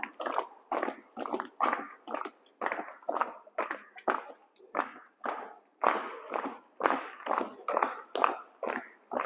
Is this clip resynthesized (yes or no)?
no